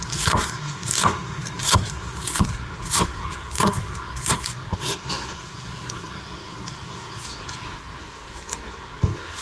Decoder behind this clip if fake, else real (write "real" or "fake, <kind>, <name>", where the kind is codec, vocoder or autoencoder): fake, codec, SNAC